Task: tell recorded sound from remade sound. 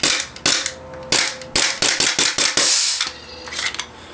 recorded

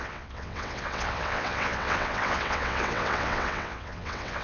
remade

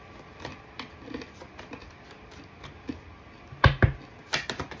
recorded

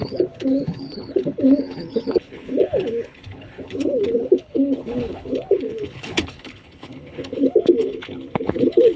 remade